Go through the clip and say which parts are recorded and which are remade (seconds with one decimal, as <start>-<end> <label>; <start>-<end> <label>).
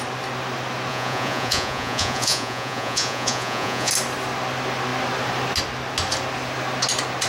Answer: 0.0-0.9 recorded; 0.9-3.9 remade; 3.9-7.3 recorded